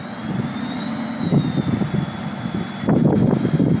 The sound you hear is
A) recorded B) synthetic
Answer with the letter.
A